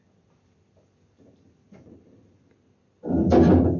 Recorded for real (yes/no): yes